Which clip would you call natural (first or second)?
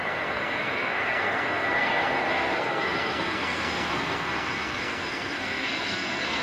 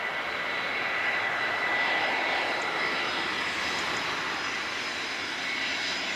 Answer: second